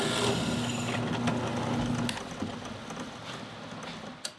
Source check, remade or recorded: recorded